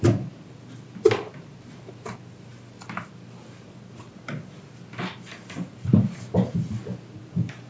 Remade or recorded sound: recorded